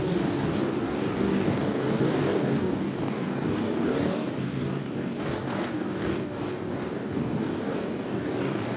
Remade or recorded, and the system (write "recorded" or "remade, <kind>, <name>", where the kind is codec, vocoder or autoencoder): remade, codec, DAC